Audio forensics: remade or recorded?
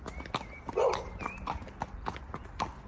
recorded